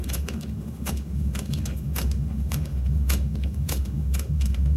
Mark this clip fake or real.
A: fake